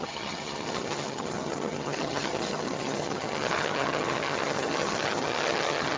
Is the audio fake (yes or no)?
yes